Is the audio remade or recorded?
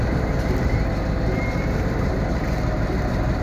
remade